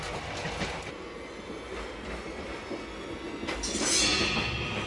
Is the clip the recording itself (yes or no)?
yes